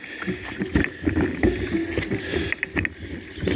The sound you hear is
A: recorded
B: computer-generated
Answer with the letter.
A